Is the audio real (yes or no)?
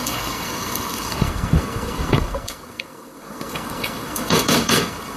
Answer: no